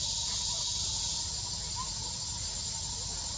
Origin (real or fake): real